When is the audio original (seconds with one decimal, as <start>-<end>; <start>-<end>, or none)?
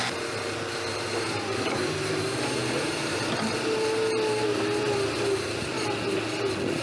0.0-0.9; 3.9-6.8